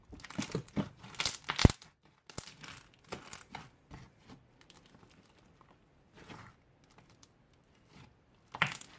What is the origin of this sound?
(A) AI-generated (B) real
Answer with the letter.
B